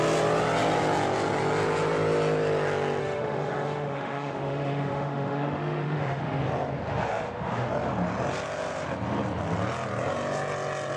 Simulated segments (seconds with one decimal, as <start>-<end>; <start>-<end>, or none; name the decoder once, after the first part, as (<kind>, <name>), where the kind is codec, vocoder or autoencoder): 3.0-6.4 (autoencoder, DAC-VAE); 6.9-7.7